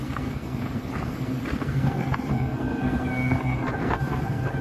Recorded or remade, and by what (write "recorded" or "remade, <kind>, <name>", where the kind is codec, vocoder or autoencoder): remade, codec, SNAC